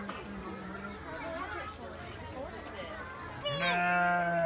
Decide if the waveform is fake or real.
real